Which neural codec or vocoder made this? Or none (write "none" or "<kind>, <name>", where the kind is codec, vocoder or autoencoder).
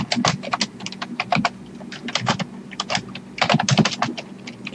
none